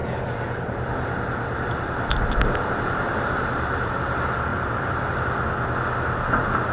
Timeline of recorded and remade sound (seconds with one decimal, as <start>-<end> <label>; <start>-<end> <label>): 0.0-3.9 remade; 3.9-4.5 recorded; 4.5-5.1 remade; 5.1-6.7 recorded